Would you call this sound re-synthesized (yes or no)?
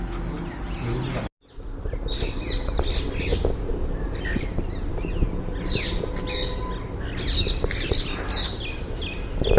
no